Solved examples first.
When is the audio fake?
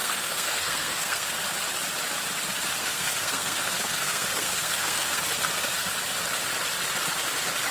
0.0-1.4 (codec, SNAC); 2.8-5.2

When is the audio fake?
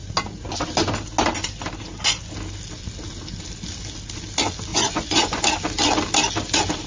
4.7-5.4 (vocoder, Vocos)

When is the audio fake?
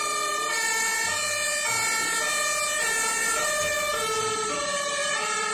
0.0-0.9 (vocoder, BigVGAN v2); 4.2-5.0